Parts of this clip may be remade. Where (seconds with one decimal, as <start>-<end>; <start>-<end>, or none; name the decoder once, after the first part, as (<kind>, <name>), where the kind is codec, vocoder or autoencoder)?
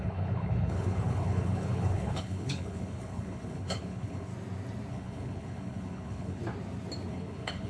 0.0-4.3 (codec, HILCodec); 4.9-6.4; 7.1-7.7